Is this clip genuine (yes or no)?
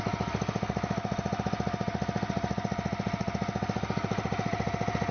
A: yes